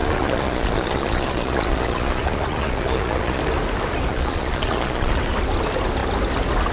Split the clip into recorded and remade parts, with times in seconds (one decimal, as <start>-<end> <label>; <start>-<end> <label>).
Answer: 0.0-3.4 remade; 3.4-4.1 recorded; 4.1-5.2 remade; 5.2-6.7 recorded